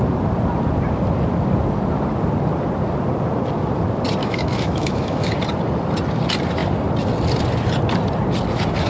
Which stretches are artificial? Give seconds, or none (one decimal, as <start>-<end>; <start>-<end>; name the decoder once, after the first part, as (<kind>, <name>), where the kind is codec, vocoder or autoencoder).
4.2-5.3 (autoencoder, DAC-VAE)